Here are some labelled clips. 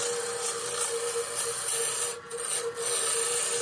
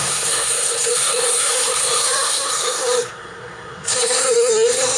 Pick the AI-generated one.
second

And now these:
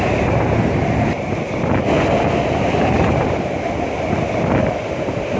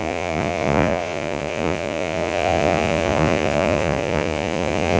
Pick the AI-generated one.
second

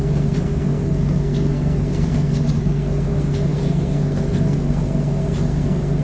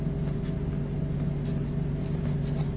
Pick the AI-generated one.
first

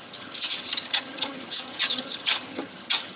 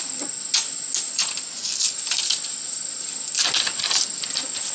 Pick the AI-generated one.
first